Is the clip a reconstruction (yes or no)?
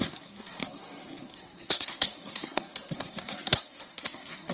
yes